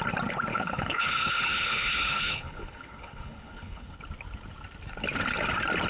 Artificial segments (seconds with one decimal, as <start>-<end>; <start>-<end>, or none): 0.5-4.0